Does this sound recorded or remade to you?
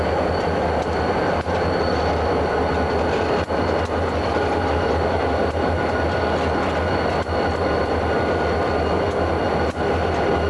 recorded